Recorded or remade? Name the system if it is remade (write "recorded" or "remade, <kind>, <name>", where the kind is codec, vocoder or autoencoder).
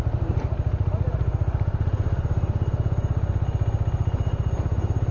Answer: recorded